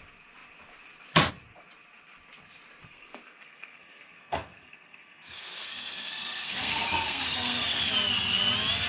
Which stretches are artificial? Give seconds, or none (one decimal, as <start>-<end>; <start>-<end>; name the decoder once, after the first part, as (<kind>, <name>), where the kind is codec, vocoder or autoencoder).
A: 2.8-7.9 (codec, SNAC)